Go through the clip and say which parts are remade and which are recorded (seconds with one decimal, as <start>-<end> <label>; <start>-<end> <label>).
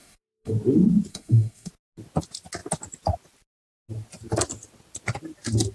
0.0-0.5 remade; 0.5-1.1 recorded; 1.1-1.7 remade; 1.7-5.7 recorded